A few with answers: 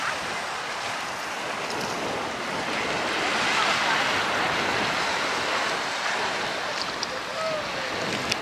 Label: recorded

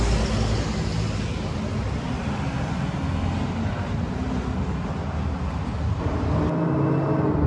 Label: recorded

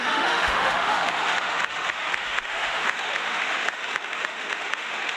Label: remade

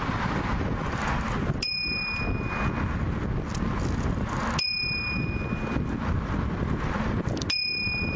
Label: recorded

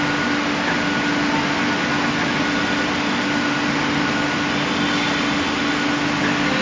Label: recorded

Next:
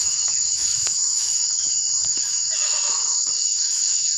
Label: remade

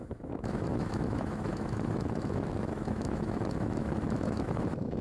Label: remade